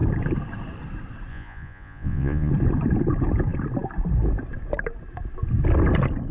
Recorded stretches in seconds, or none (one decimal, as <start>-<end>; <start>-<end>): 0.0-1.3; 2.5-6.3